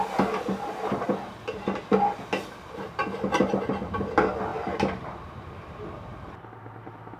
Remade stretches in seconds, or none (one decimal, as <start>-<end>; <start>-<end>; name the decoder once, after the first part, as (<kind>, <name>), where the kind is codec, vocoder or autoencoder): 4.5-6.5 (vocoder, BigVGAN v2)